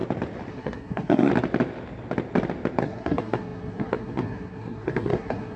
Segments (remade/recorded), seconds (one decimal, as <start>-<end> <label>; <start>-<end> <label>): 0.0-0.5 recorded; 0.5-1.3 remade; 1.3-2.8 recorded; 2.8-5.6 remade

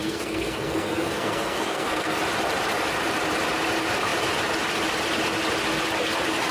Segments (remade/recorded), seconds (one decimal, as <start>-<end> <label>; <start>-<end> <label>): 0.0-2.2 remade; 2.2-6.5 recorded

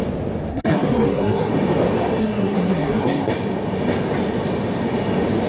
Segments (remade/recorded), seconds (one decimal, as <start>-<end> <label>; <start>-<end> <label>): 0.0-0.5 recorded; 0.5-1.5 remade; 1.5-2.2 recorded; 2.2-3.3 remade; 3.3-5.5 recorded

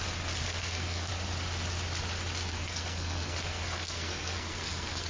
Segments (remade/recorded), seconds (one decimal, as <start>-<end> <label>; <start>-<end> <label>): 0.0-0.4 recorded; 0.4-1.1 remade; 1.1-2.5 recorded; 2.5-5.1 remade

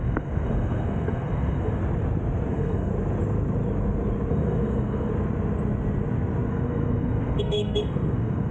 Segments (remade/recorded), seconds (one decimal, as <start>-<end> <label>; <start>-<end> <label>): 0.0-1.8 remade; 1.8-2.5 recorded; 2.5-2.9 remade; 2.9-4.3 recorded; 4.3-5.1 remade; 5.1-6.5 recorded; 6.5-8.5 remade

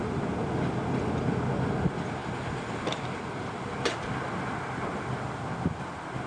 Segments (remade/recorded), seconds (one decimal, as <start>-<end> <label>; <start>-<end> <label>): 0.0-6.3 recorded

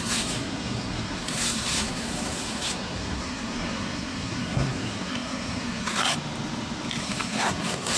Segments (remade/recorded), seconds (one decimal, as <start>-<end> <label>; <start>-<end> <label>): 0.0-6.0 remade; 6.0-7.0 recorded; 7.0-8.0 remade